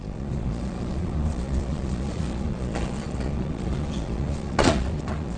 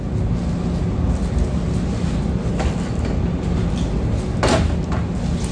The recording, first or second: second